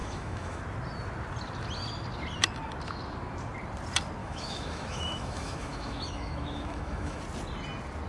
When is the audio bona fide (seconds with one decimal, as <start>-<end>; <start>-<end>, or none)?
0.6-4.2; 7.2-8.1